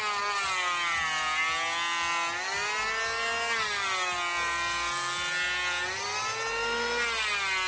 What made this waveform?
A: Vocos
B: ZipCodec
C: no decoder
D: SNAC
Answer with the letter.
C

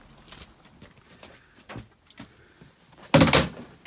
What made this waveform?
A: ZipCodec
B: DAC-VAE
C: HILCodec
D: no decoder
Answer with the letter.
D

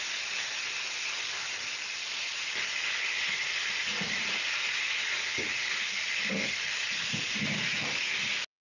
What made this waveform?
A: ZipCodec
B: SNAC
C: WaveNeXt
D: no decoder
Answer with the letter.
D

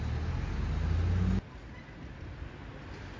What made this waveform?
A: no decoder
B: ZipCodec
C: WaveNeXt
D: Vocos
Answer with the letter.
A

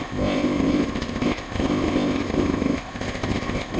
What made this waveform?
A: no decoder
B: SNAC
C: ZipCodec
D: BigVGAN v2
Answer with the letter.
C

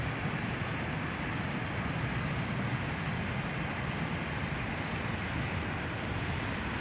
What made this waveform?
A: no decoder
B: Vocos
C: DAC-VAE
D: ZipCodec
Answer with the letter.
A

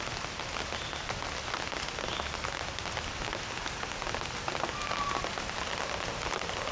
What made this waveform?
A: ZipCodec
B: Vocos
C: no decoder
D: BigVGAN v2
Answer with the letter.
C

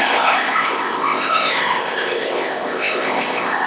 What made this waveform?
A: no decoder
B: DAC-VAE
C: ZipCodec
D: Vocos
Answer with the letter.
C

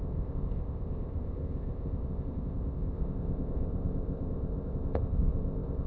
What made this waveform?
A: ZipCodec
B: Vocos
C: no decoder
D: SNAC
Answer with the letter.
A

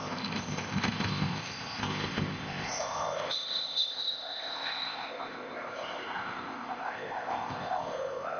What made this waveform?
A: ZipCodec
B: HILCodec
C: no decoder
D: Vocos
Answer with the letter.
A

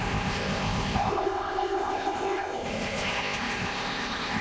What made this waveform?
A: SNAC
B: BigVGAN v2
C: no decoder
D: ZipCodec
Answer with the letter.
D